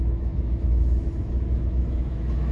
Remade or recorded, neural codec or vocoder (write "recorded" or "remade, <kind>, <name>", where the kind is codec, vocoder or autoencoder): remade, autoencoder, DAC-VAE